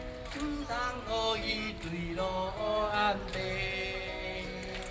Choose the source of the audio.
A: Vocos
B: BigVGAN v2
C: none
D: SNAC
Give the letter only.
C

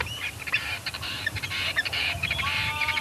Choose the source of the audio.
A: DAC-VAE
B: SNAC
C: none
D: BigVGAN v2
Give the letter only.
D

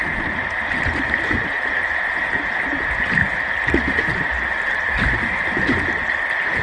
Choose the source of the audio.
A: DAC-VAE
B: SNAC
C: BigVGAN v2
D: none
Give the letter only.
D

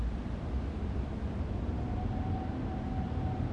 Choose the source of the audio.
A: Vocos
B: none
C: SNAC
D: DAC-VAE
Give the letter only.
B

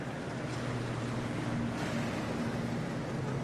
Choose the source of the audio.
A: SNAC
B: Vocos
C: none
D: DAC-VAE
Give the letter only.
C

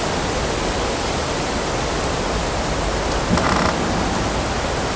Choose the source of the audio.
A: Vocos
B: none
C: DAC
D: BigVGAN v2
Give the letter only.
B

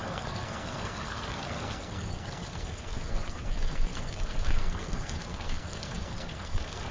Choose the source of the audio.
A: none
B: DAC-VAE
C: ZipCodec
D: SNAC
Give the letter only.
D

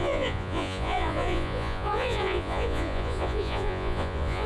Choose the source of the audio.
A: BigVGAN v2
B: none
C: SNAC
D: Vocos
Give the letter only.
D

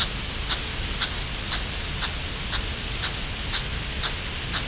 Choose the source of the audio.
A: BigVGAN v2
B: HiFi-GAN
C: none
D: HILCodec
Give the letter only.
C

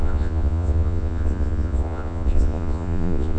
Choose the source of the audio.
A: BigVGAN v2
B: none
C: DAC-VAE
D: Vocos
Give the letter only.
D